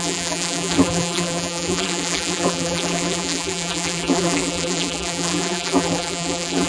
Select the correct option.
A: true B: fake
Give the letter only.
B